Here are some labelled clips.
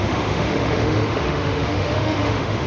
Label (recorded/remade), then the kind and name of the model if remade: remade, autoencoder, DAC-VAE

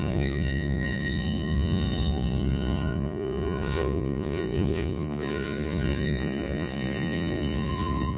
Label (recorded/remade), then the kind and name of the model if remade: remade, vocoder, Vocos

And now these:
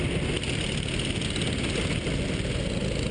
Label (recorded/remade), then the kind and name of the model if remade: recorded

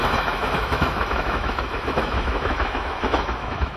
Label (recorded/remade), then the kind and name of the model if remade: remade, autoencoder, DAC-VAE